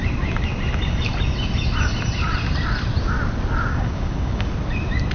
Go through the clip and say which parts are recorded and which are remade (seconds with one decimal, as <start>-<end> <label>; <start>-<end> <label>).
0.0-3.7 recorded; 3.7-4.5 remade; 4.5-5.1 recorded